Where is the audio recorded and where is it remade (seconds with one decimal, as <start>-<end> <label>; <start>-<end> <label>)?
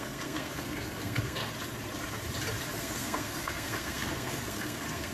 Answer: 0.0-1.4 remade; 1.4-2.8 recorded; 2.8-5.1 remade